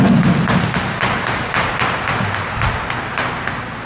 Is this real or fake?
real